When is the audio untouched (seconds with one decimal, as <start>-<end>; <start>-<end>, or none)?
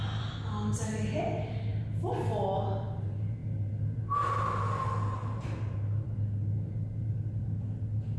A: 0.0-8.2